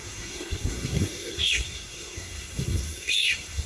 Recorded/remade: remade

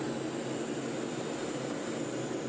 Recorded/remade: recorded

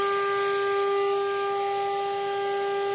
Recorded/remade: recorded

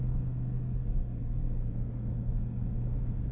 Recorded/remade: remade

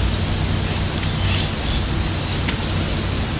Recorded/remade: recorded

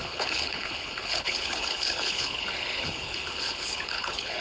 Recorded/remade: remade